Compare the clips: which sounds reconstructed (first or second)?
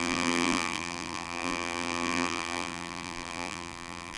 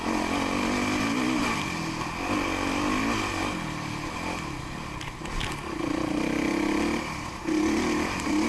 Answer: first